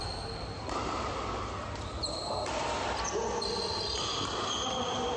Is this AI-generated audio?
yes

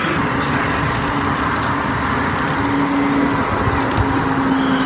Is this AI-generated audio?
no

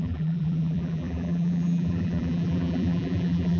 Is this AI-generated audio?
yes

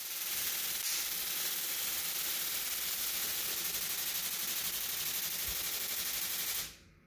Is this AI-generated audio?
no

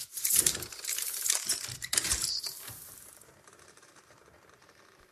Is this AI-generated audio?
yes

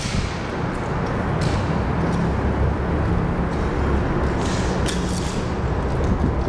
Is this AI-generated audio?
no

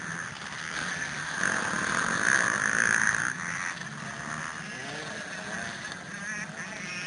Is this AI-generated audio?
no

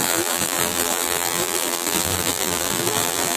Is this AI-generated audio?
yes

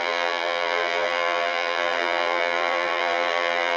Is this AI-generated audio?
yes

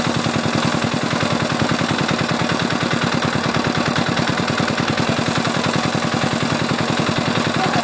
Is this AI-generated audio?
no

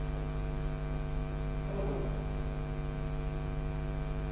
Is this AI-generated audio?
no